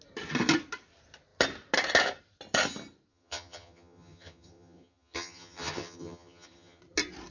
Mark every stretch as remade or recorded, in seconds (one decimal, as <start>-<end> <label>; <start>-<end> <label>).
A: 0.0-3.1 recorded; 3.1-6.8 remade; 6.8-7.3 recorded